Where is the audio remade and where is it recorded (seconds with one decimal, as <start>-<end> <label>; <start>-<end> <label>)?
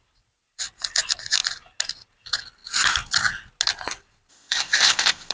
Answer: 0.0-4.3 recorded; 4.3-5.3 remade